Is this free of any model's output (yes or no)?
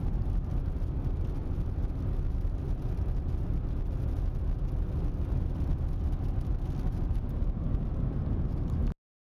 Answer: yes